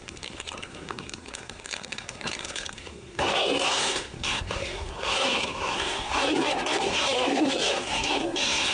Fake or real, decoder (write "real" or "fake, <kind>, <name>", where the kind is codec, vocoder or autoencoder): fake, codec, SNAC